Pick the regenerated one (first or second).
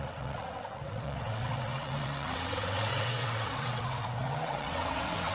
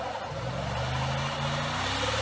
first